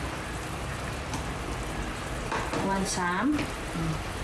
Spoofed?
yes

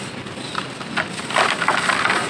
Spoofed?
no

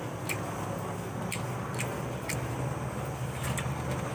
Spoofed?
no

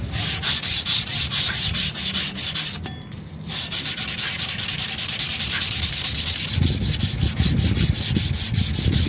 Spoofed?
no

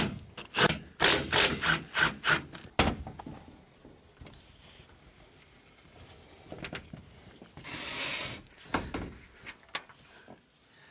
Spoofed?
no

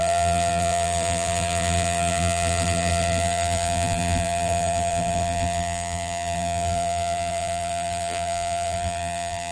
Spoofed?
yes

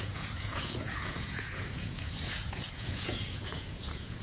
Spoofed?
yes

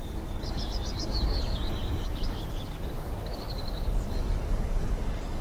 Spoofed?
yes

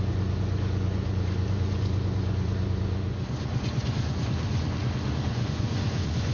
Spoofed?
yes